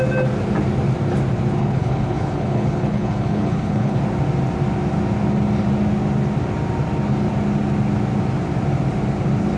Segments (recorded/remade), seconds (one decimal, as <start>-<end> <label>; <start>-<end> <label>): 0.0-1.6 recorded; 1.6-4.0 remade; 4.0-9.6 recorded